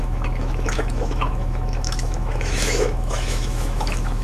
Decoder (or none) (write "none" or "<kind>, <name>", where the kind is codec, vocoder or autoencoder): autoencoder, DAC-VAE